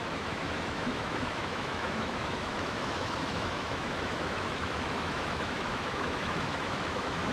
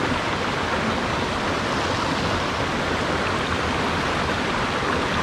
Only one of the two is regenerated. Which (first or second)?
first